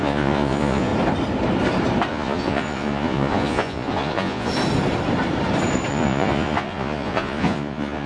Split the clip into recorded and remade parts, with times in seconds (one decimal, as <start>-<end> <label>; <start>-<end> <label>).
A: 0.0-0.9 remade; 0.9-2.1 recorded; 2.1-4.5 remade; 4.5-5.9 recorded; 5.9-8.1 remade